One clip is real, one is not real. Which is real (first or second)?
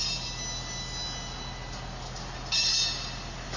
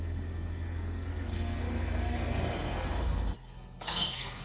first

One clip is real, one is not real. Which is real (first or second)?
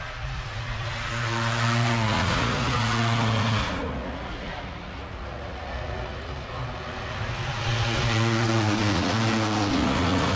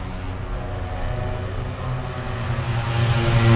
second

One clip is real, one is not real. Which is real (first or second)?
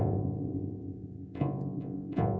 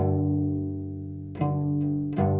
second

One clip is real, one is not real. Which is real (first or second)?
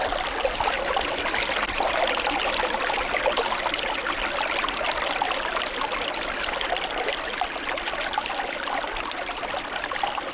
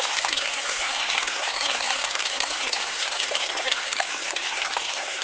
first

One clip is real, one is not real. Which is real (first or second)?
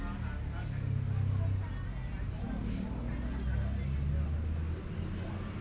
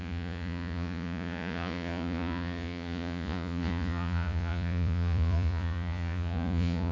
first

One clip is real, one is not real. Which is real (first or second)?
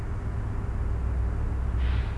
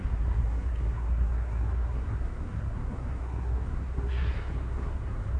first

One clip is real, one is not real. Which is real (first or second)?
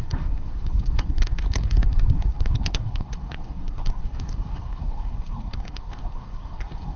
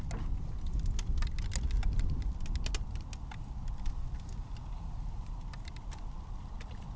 second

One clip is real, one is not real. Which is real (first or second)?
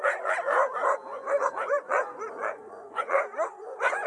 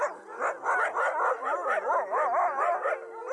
second